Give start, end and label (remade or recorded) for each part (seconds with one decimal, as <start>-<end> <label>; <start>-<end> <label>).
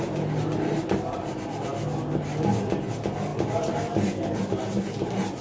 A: 0.0-5.4 recorded